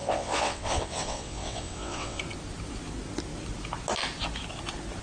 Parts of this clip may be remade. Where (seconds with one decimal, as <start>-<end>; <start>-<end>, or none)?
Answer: 0.0-2.2